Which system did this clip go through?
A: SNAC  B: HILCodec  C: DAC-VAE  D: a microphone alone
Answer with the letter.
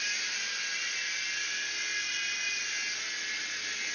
D